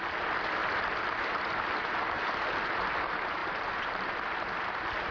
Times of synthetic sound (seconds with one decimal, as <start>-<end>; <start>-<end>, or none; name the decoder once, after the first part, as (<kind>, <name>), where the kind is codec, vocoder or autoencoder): 0.6-2.7 (vocoder, BigVGAN v2); 3.4-4.4